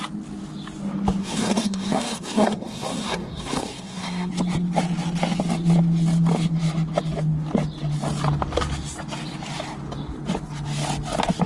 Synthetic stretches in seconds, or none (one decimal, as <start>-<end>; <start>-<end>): 1.2-4.3